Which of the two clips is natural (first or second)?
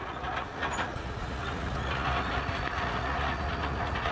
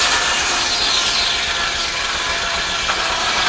second